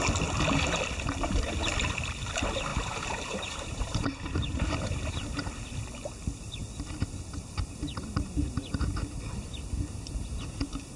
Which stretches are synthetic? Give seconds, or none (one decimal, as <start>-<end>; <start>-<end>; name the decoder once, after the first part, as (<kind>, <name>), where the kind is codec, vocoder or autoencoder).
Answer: 2.7-5.4 (vocoder, BigVGAN v2)